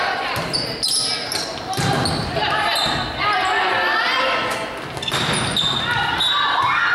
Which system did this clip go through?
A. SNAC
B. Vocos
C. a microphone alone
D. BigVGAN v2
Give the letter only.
C